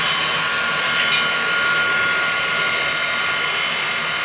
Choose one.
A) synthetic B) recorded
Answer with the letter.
B